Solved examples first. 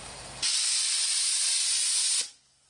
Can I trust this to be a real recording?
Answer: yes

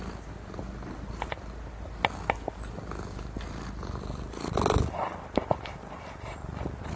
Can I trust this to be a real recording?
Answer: yes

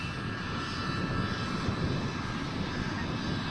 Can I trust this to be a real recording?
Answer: yes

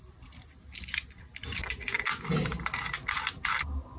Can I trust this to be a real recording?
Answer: yes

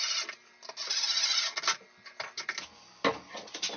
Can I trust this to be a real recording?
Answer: yes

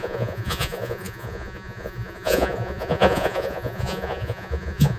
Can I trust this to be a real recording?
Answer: no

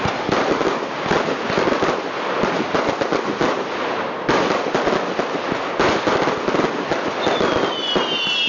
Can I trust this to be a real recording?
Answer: yes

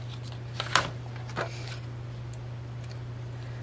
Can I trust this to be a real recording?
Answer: no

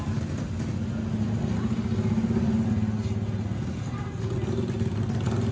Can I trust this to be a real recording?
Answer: yes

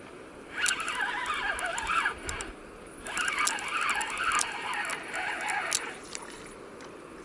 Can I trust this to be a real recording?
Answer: yes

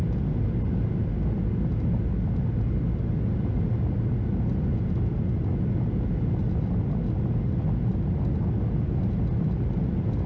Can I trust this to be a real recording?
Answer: yes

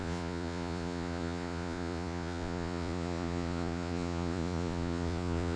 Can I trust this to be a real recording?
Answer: no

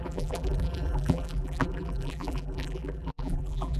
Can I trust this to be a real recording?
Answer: no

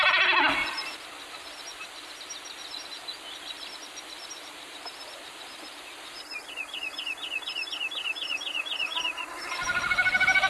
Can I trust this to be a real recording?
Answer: yes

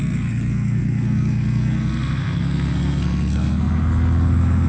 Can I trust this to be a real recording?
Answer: no